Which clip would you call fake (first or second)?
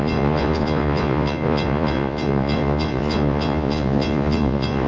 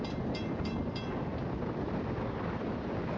first